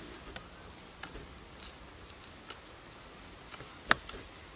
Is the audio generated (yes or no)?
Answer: no